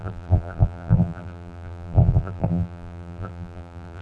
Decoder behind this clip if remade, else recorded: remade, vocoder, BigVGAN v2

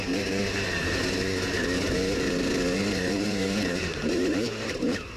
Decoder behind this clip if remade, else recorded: remade, vocoder, BigVGAN v2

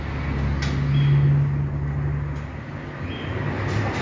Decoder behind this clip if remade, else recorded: recorded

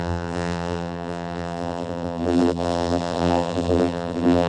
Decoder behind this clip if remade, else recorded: remade, vocoder, BigVGAN v2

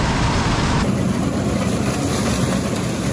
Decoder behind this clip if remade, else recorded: remade, vocoder, BigVGAN v2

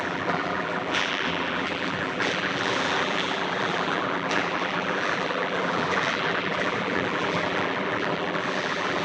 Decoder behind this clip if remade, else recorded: remade, vocoder, BigVGAN v2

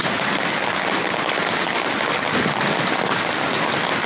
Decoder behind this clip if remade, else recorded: recorded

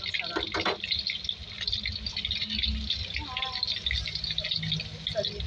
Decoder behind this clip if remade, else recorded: recorded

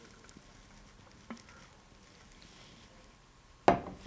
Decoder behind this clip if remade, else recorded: recorded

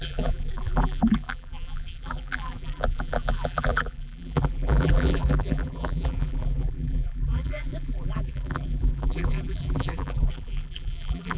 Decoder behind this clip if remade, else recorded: remade, vocoder, BigVGAN v2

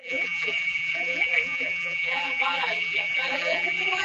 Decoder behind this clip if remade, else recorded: remade, vocoder, BigVGAN v2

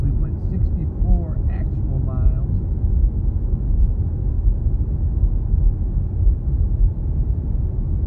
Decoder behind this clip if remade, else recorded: recorded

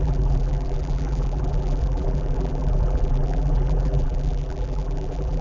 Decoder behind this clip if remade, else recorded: remade, vocoder, BigVGAN v2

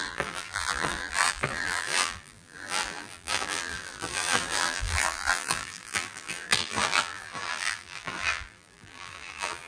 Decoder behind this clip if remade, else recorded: remade, vocoder, BigVGAN v2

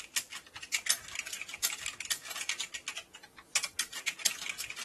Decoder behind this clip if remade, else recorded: recorded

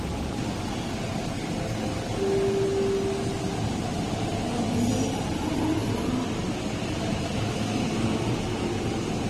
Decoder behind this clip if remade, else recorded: recorded